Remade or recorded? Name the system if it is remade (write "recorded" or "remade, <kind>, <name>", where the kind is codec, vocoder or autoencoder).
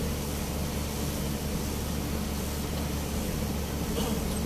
recorded